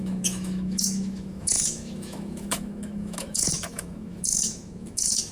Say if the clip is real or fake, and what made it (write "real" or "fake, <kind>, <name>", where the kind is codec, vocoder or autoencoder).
fake, autoencoder, DAC-VAE